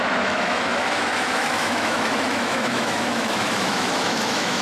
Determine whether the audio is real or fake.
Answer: fake